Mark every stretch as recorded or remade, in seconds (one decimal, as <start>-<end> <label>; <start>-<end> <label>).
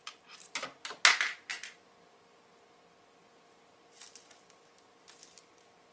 0.0-5.9 recorded